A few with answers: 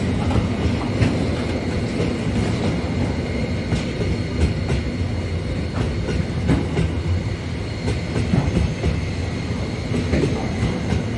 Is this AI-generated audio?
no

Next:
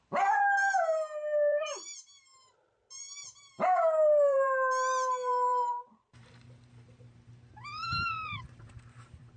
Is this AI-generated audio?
yes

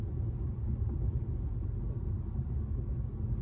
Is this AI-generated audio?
no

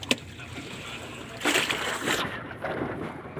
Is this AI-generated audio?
no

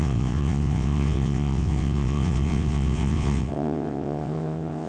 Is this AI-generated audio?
yes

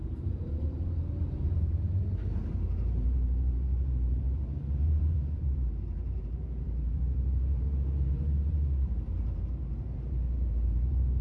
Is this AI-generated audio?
yes